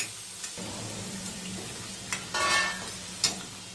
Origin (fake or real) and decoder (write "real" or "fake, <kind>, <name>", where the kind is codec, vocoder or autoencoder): real